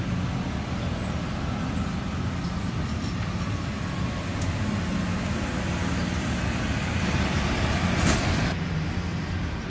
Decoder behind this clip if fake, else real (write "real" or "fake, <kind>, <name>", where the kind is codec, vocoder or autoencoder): real